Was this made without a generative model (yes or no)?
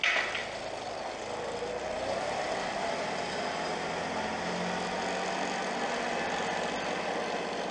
yes